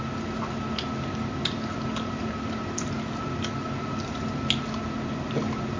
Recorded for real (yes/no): yes